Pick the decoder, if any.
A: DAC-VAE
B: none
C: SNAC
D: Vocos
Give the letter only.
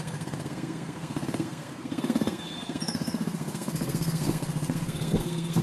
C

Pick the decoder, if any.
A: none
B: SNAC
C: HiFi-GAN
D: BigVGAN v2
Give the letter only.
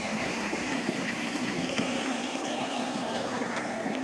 B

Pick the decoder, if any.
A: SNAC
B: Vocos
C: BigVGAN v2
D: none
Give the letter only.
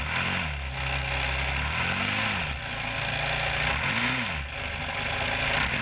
D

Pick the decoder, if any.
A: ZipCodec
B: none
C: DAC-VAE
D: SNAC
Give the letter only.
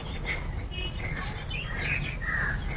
B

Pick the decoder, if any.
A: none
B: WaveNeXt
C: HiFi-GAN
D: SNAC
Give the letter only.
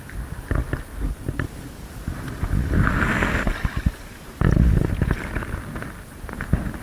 A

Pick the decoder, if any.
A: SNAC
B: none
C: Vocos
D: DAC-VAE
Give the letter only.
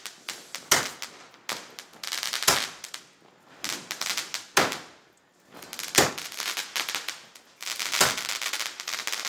B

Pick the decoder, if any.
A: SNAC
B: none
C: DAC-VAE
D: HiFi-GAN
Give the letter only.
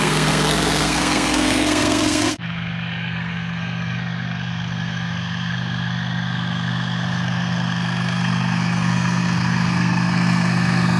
A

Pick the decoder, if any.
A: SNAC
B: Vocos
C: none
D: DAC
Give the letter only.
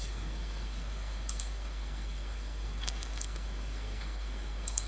A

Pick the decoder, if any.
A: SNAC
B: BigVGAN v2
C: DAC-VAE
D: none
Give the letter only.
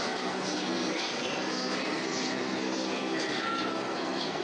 A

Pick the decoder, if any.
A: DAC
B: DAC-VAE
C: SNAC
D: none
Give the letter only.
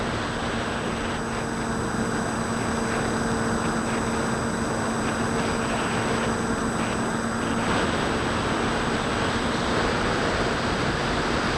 D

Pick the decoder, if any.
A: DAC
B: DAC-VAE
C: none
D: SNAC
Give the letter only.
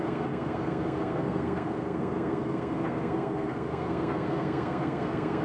D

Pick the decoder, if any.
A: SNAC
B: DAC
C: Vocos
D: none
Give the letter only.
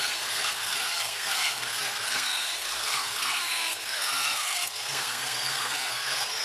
A